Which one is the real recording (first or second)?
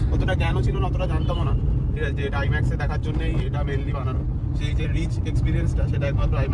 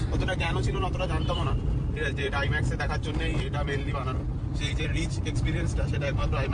first